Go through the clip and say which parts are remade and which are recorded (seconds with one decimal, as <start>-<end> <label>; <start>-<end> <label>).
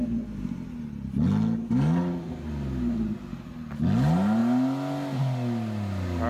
0.0-6.3 recorded